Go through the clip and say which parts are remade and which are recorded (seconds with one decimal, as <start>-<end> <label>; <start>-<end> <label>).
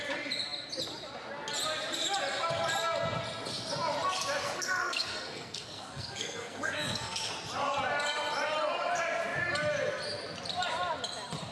0.0-4.4 recorded; 4.4-7.3 remade; 7.3-11.5 recorded